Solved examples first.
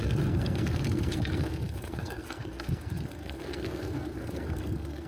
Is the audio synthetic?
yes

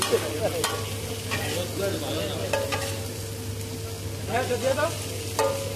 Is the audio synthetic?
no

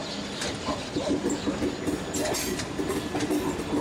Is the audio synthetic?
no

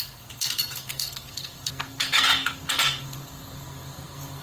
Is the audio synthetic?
yes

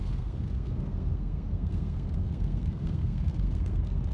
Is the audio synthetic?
yes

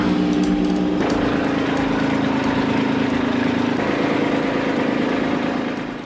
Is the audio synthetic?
no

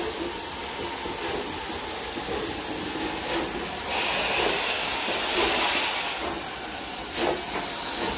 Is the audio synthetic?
no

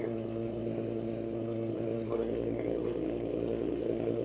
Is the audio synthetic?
yes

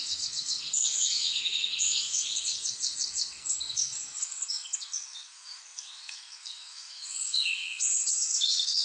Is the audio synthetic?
yes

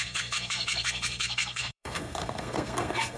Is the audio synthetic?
yes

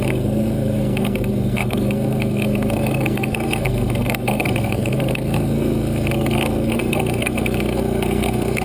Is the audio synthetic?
yes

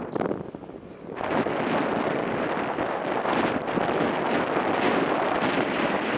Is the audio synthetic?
no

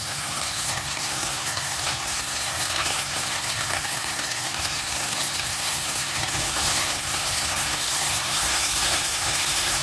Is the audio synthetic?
yes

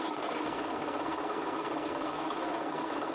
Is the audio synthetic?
yes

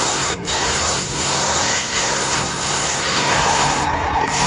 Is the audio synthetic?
yes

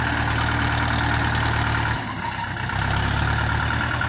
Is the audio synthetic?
no